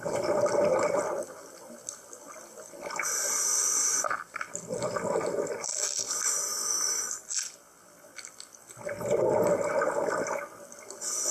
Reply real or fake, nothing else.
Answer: real